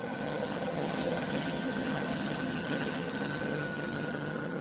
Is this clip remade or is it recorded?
remade